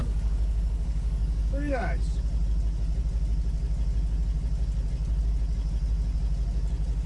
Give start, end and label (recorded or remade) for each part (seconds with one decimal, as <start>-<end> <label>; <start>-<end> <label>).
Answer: 0.0-1.9 remade; 1.9-7.1 recorded